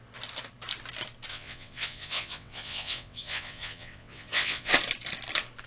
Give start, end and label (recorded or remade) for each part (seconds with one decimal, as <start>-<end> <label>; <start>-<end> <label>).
0.0-1.3 recorded; 1.3-4.7 remade; 4.7-5.7 recorded